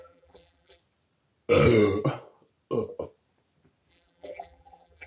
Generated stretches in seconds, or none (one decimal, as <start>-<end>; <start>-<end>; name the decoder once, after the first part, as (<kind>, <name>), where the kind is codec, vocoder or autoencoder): 0.0-0.8 (vocoder, BigVGAN v2); 3.9-5.1

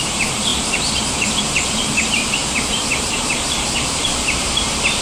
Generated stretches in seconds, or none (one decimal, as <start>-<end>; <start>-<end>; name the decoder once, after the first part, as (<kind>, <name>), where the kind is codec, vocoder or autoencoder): 0.0-2.4 (vocoder, BigVGAN v2); 3.0-5.0

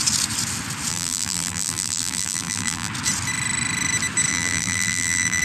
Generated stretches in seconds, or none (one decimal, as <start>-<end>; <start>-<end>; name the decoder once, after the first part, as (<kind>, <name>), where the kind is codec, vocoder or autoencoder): 0.9-2.9 (vocoder, BigVGAN v2); 4.3-5.4